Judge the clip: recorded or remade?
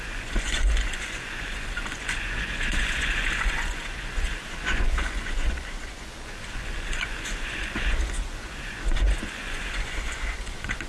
remade